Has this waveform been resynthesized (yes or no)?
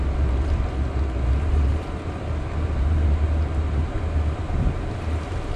no